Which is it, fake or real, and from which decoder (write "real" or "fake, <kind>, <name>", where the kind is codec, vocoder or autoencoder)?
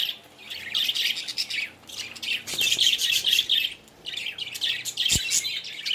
real